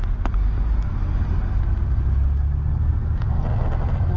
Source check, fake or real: real